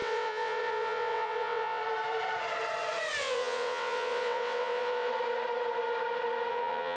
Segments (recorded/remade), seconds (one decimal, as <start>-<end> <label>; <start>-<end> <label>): 0.0-1.8 remade; 1.8-3.2 recorded; 3.2-5.1 remade; 5.1-6.5 recorded; 6.5-7.0 remade